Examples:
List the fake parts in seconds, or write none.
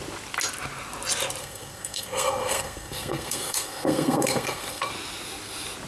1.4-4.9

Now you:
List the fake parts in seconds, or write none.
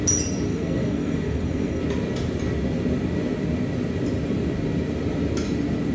0.5-1.8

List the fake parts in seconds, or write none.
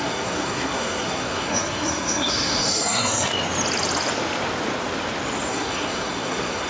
0.0-3.3; 5.5-6.7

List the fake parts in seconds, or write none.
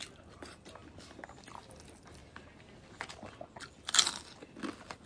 none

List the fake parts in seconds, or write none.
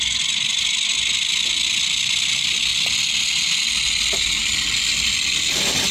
none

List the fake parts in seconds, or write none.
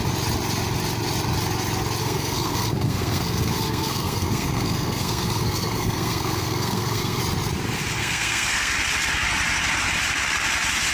2.0-7.2; 8.0-8.7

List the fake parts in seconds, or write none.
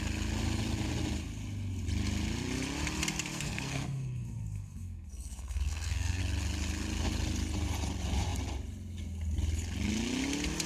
3.3-6.2